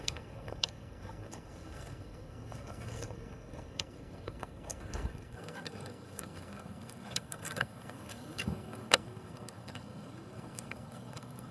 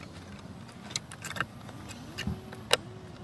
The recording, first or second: second